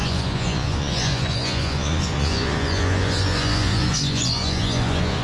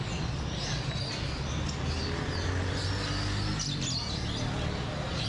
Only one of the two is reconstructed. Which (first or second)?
first